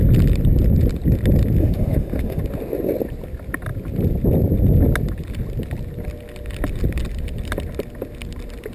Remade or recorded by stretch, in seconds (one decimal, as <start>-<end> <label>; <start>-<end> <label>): 0.0-1.6 recorded; 1.6-2.4 remade; 2.4-8.7 recorded